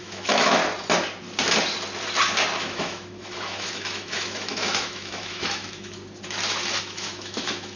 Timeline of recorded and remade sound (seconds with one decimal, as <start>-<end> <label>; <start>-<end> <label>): 0.0-0.6 remade; 0.6-2.6 recorded; 2.6-6.0 remade; 6.0-6.8 recorded; 6.8-7.8 remade